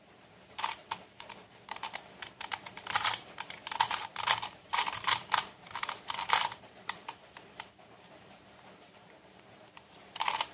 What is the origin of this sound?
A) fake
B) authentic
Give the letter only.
A